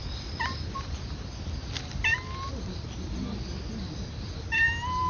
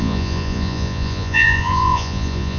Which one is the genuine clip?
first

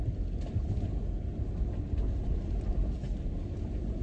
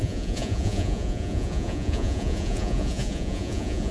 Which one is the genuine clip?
first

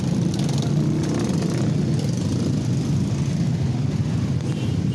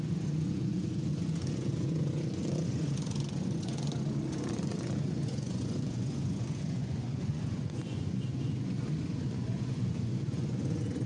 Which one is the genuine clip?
first